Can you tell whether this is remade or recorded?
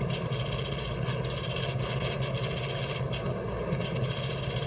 recorded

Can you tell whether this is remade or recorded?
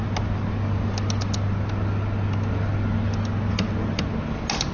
recorded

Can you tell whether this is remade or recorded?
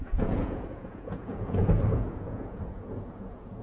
remade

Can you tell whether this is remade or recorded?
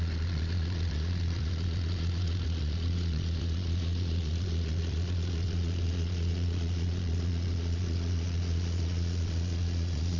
remade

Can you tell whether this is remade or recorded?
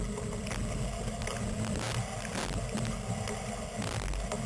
recorded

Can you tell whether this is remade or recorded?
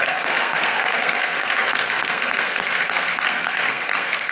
remade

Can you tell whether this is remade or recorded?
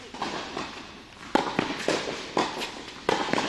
recorded